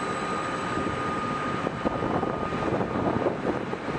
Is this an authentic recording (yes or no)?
yes